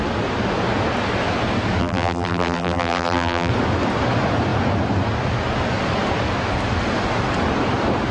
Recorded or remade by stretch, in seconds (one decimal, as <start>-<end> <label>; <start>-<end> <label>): 0.0-1.8 recorded; 1.8-3.5 remade; 3.5-8.1 recorded